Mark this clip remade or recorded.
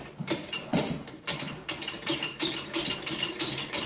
remade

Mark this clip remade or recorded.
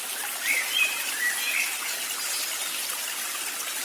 remade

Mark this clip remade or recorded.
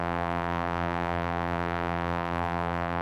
remade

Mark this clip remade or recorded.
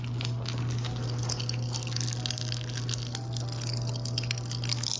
recorded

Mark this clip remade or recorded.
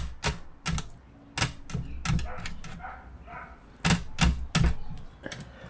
recorded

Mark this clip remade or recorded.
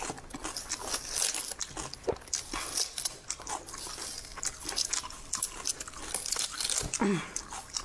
recorded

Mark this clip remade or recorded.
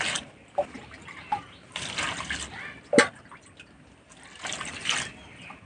recorded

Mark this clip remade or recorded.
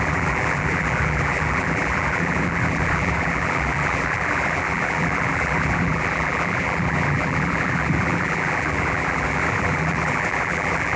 remade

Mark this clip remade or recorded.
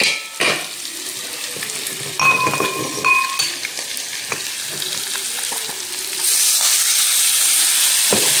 recorded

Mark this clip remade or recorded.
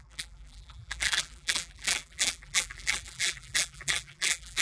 remade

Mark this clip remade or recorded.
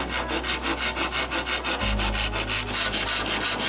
recorded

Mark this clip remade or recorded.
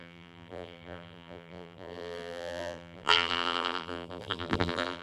remade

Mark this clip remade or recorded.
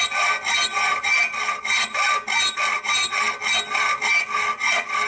recorded